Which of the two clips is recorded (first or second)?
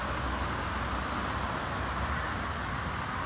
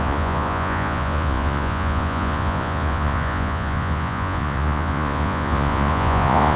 first